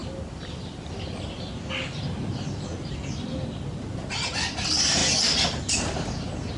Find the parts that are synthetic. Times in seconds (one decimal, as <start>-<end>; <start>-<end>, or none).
none